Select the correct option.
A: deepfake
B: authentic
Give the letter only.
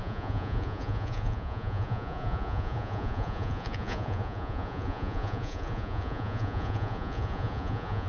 A